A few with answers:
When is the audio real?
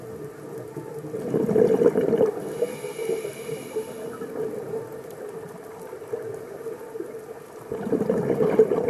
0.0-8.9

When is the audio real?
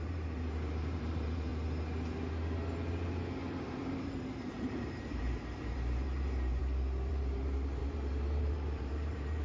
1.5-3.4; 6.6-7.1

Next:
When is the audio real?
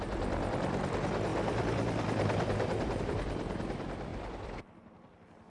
0.0-1.3; 3.0-4.1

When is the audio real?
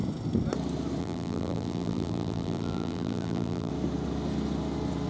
0.0-1.0; 3.7-5.1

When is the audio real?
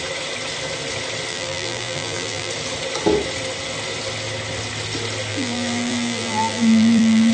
0.0-1.3; 2.5-5.3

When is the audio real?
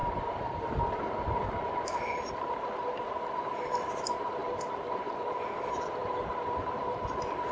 2.3-4.4; 5.1-7.5